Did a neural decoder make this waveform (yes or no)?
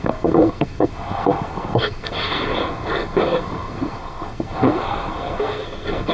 yes